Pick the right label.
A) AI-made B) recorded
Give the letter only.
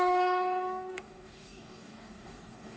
A